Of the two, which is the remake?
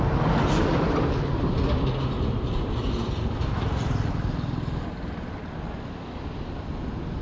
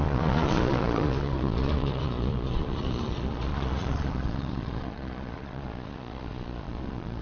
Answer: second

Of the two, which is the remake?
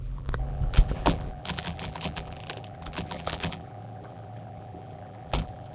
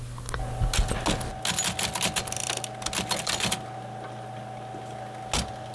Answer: first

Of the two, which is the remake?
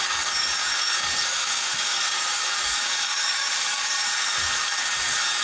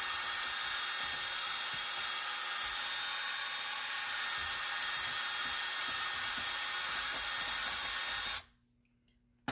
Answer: first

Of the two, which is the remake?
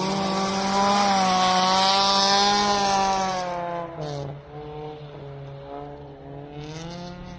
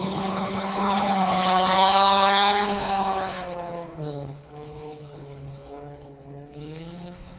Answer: second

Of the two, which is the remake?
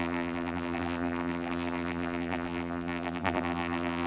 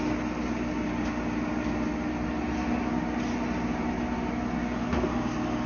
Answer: first